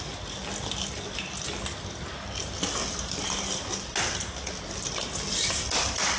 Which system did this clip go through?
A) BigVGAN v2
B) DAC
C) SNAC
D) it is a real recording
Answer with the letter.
D